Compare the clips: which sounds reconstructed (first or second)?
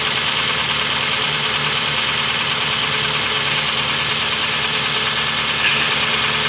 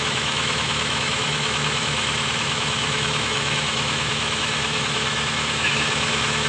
second